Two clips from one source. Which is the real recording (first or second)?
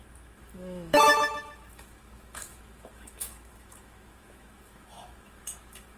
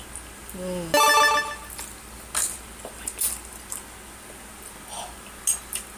second